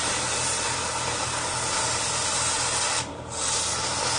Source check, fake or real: real